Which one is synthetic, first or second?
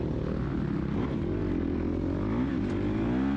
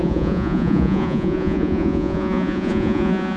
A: second